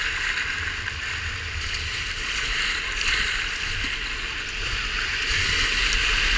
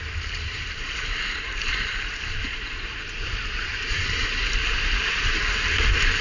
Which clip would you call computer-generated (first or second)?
second